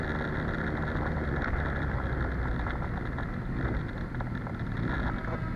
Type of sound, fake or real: real